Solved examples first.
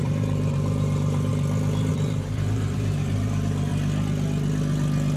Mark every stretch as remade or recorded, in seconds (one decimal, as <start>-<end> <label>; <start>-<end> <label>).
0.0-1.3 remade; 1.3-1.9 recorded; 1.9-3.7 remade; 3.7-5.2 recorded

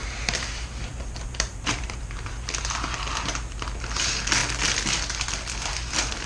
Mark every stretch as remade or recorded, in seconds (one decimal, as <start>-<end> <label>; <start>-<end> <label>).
0.0-0.9 recorded; 0.9-2.3 remade; 2.3-6.3 recorded

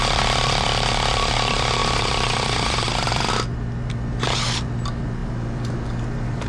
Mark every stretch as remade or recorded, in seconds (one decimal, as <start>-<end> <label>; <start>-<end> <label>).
0.0-1.8 recorded; 1.8-3.3 remade; 3.3-6.5 recorded